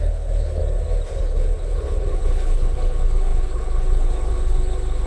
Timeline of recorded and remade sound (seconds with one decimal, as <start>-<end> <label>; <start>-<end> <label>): 0.0-0.6 remade; 0.6-1.2 recorded; 1.2-5.1 remade